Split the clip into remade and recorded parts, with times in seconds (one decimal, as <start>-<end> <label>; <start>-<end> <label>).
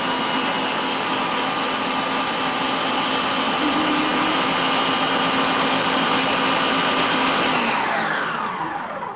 0.0-9.2 recorded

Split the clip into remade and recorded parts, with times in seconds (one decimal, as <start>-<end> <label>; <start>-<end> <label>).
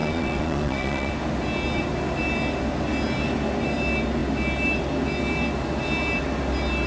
0.0-1.1 remade; 1.1-6.9 recorded